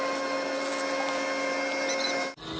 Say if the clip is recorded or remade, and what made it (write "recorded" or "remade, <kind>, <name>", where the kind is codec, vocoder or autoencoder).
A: recorded